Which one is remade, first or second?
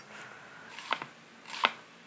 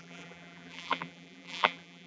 second